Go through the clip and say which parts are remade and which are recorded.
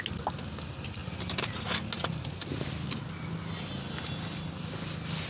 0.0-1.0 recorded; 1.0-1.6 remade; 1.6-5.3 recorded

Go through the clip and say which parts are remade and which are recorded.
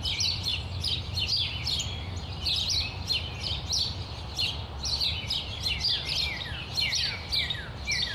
0.0-8.1 recorded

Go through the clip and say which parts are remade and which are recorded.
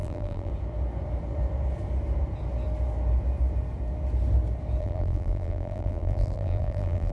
0.0-0.5 remade; 0.5-4.8 recorded; 4.8-7.1 remade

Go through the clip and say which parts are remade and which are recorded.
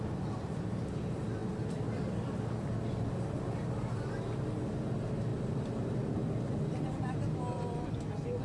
0.0-1.4 recorded; 1.4-3.2 remade; 3.2-5.3 recorded; 5.3-7.9 remade; 7.9-8.4 recorded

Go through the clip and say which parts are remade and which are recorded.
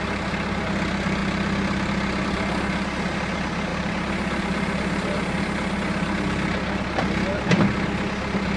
0.0-3.7 recorded; 3.7-5.4 remade; 5.4-8.6 recorded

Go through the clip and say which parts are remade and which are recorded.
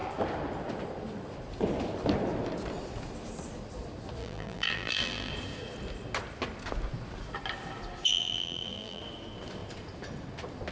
0.0-4.2 recorded; 4.2-5.3 remade; 5.3-8.1 recorded; 8.1-9.0 remade; 9.0-10.7 recorded